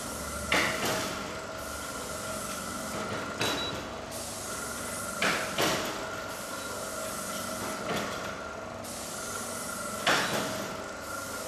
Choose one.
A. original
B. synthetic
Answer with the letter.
A